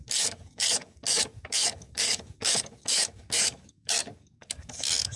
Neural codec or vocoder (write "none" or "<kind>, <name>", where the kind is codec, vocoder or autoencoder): codec, DAC